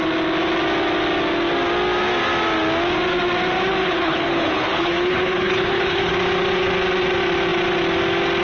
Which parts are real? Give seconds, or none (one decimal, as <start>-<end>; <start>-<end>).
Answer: 0.0-3.8; 6.1-8.4